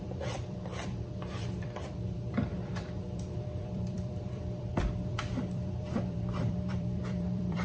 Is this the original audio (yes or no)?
no